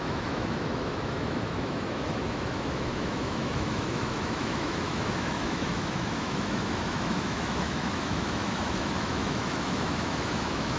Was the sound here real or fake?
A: fake